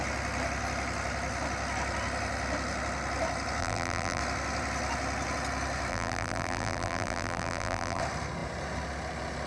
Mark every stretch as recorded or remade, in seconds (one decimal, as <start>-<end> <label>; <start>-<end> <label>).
0.0-3.6 recorded; 3.6-4.2 remade; 4.2-5.9 recorded; 5.9-8.0 remade; 8.0-9.5 recorded